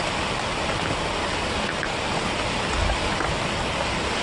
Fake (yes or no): no